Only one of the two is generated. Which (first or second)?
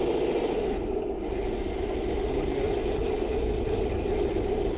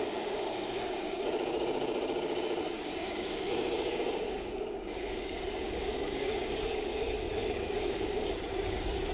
second